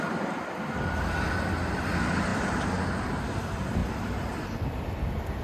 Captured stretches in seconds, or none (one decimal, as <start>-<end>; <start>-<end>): 0.0-5.4